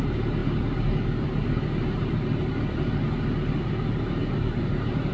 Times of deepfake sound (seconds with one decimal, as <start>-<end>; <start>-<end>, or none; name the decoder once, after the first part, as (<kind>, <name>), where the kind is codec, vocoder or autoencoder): none